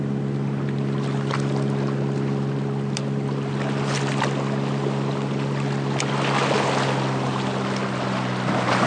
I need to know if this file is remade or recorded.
recorded